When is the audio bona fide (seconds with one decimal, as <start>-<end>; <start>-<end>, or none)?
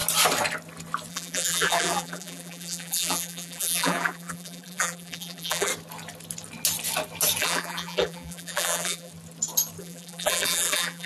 0.0-1.1; 5.7-7.4; 9.1-9.8